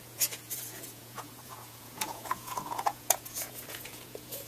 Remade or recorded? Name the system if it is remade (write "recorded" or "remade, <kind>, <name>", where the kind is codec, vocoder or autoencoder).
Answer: remade, vocoder, Vocos